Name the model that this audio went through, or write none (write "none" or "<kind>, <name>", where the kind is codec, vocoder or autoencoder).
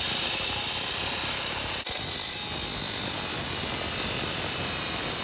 none